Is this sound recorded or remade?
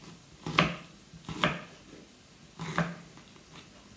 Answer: recorded